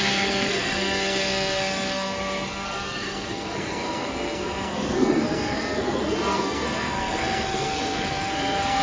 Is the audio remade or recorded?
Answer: remade